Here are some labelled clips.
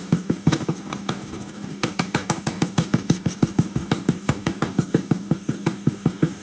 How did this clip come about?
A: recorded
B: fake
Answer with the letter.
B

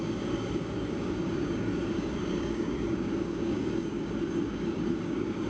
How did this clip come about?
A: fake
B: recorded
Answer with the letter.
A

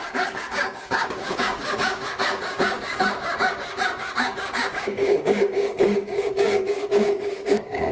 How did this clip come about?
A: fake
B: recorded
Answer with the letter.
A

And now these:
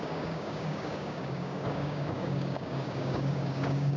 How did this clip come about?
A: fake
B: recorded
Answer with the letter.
A